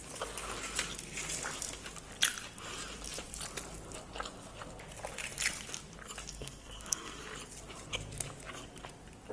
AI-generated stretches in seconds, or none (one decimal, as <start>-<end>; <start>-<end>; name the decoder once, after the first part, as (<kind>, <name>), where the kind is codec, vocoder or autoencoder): 6.3-7.2 (codec, SNAC)